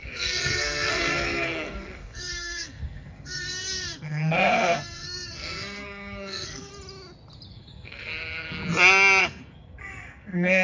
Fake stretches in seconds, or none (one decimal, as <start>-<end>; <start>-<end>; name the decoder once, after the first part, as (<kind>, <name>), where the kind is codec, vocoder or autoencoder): 0.0-6.7 (codec, SNAC); 7.5-8.6; 9.2-10.6